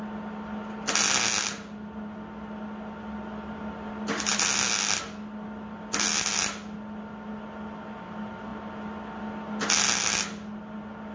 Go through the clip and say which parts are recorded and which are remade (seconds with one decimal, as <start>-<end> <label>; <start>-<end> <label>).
0.0-11.1 recorded